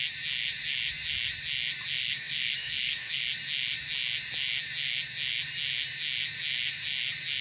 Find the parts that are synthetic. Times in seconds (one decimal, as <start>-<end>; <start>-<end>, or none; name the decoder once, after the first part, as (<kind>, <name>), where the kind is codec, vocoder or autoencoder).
2.0-3.2 (autoencoder, DAC-VAE)